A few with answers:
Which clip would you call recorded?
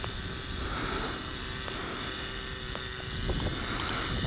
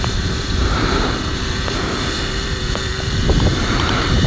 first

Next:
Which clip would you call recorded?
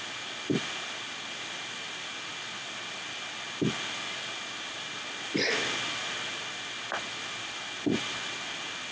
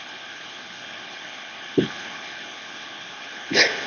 first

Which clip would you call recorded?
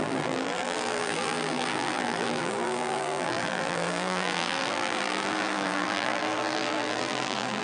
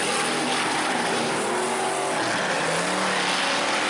second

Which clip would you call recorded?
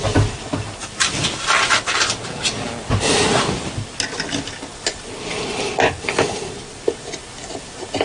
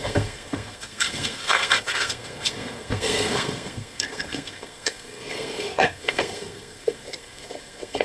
first